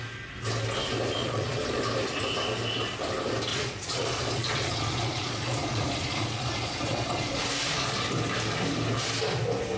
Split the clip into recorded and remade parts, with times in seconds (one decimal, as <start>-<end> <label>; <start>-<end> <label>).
0.0-1.2 recorded; 1.2-1.8 remade; 1.8-3.5 recorded; 3.5-7.4 remade; 7.4-9.8 recorded